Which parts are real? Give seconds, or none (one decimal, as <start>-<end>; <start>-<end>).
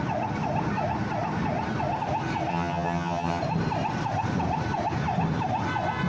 0.0-2.5; 3.4-6.1